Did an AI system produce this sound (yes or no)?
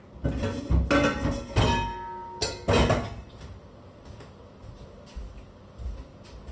no